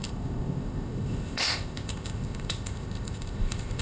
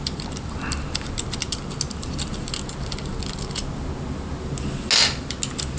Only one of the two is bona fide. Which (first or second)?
second